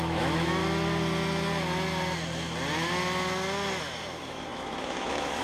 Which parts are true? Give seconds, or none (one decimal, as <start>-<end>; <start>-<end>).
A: 0.6-3.8